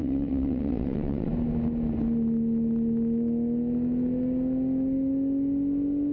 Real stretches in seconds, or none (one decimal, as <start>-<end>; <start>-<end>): 1.3-6.1